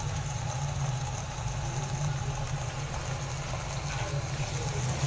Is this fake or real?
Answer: real